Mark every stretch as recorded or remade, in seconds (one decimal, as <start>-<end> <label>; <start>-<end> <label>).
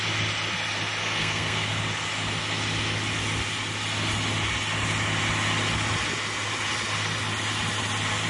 0.0-1.0 recorded; 1.0-1.7 remade; 1.7-8.3 recorded